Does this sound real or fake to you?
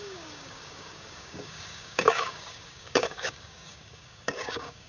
fake